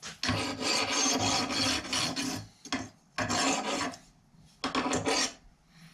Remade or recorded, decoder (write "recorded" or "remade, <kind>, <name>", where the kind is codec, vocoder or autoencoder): recorded